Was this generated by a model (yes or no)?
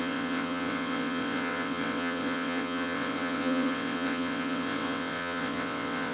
yes